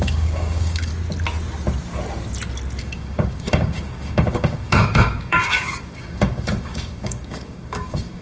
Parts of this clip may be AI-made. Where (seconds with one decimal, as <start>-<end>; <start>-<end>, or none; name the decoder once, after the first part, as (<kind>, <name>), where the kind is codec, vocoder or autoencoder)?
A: 0.0-0.9 (codec, DAC); 2.8-8.2